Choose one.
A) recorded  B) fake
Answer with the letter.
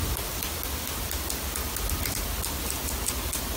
A